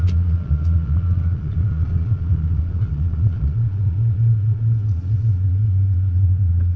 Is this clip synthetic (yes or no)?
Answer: yes